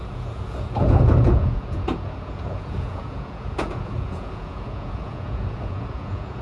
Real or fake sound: fake